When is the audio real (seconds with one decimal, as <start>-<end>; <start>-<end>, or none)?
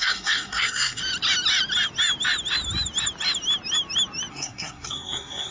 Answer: 1.0-4.3